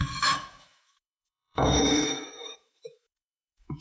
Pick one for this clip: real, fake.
fake